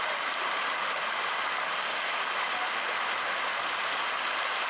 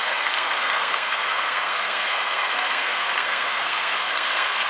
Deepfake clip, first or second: second